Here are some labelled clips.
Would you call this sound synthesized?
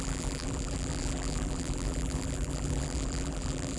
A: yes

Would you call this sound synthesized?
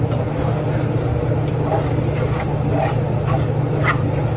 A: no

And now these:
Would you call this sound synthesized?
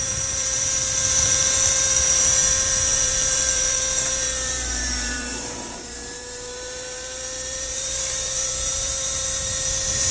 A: yes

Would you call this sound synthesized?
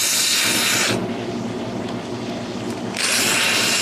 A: no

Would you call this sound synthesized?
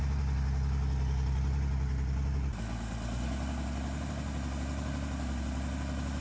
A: no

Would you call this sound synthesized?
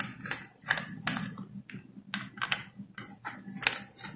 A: no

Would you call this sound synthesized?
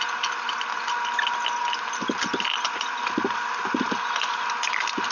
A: no